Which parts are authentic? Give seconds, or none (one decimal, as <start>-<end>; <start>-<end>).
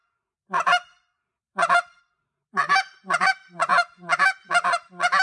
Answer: 0.0-5.2